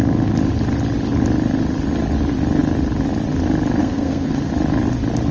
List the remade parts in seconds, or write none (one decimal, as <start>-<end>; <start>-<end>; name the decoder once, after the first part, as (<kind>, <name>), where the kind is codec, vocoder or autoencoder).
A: 3.8-4.5 (codec, SNAC)